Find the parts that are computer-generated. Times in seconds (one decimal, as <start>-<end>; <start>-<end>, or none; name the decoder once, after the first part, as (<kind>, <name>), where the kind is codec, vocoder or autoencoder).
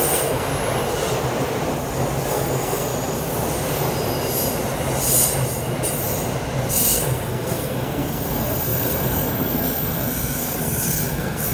0.0-0.5 (codec, SNAC); 2.3-2.9; 6.7-11.5